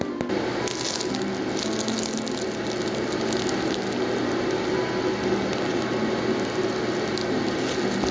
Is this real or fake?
real